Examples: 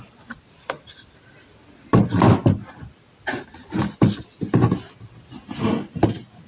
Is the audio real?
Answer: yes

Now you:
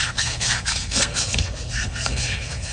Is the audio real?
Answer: no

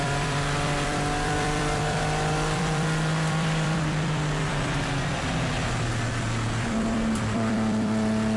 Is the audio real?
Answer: no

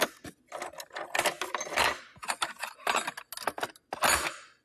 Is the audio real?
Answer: yes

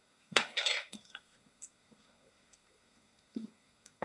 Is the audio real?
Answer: no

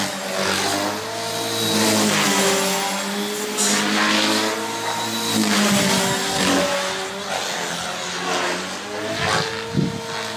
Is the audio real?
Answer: yes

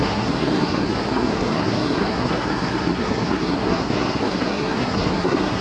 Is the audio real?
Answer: no